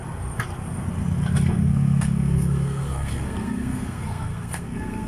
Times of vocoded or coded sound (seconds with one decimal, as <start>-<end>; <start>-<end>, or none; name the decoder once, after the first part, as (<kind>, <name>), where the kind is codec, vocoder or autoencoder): 1.5-5.1 (codec, SNAC)